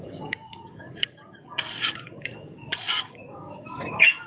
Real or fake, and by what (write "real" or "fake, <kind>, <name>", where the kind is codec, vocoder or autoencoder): fake, codec, DAC